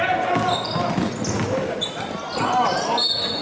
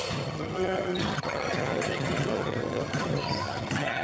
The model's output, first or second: second